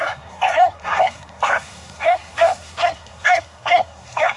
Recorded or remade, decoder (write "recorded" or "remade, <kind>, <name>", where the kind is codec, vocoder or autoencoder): remade, codec, SNAC